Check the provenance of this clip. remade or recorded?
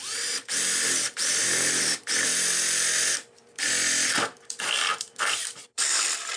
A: remade